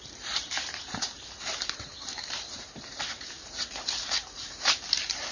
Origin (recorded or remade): remade